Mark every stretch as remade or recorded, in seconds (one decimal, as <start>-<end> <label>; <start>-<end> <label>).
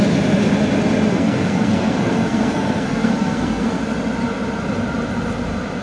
0.0-1.1 recorded; 1.1-3.8 remade; 3.8-5.8 recorded